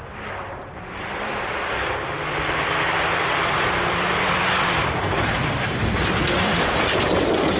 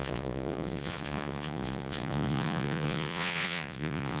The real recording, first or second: first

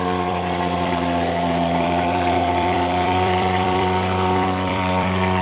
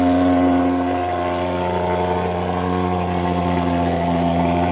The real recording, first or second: second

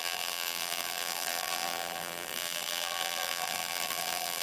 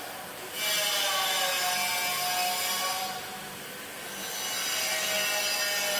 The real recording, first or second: second